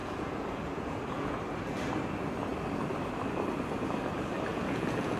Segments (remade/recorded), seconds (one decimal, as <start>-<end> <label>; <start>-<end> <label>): 0.0-1.4 remade; 1.4-4.5 recorded; 4.5-5.2 remade